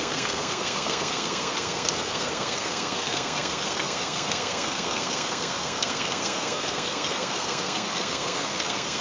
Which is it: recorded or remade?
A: remade